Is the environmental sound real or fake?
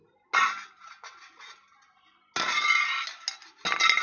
real